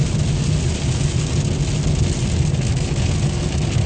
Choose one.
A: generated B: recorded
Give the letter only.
B